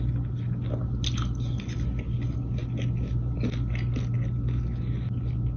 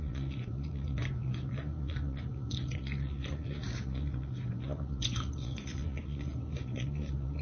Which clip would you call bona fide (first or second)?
first